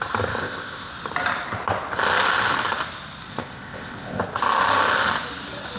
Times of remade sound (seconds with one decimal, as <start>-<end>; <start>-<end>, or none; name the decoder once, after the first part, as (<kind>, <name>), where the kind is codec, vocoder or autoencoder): 0.4-0.9 (codec, ZipCodec); 3.3-4.2